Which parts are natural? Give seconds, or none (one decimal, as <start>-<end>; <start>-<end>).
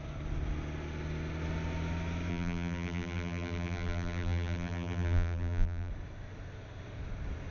0.0-2.3; 5.9-7.5